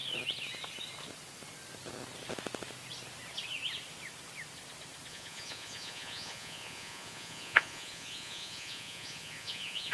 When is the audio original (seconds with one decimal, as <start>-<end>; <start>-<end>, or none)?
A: 0.0-5.1